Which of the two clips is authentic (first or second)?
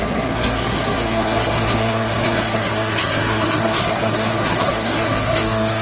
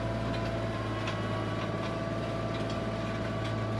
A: second